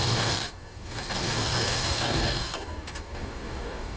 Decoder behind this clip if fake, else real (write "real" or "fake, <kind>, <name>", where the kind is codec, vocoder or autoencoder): fake, codec, DAC